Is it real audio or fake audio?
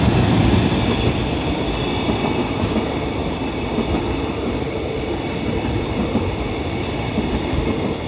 real